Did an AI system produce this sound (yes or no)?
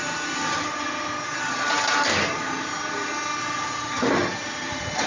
no